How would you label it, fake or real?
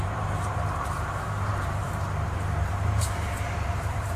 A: fake